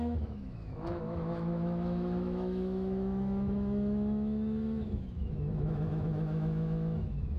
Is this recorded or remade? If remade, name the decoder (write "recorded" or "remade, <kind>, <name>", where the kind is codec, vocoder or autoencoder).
remade, autoencoder, DAC-VAE